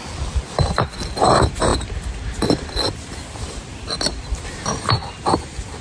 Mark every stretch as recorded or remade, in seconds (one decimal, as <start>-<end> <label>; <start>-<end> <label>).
0.0-5.8 recorded